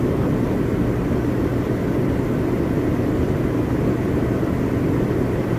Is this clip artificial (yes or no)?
no